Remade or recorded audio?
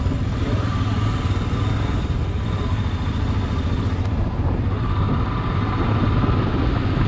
recorded